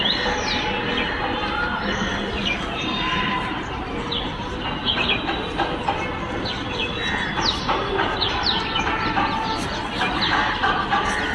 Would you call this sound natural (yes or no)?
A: yes